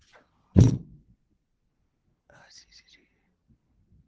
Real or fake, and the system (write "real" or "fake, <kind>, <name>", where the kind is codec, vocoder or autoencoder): fake, vocoder, WaveNeXt